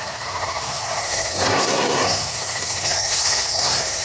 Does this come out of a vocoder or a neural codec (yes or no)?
yes